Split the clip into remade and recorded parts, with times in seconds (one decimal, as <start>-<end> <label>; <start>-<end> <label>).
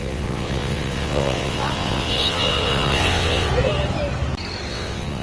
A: 0.0-3.5 remade; 3.5-4.7 recorded; 4.7-5.2 remade